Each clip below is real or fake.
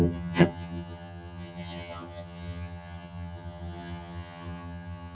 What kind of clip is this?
fake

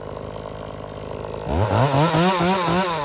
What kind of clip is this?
real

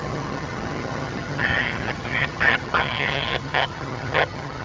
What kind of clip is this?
fake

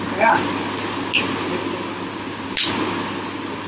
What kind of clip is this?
real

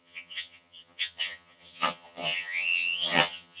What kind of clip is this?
fake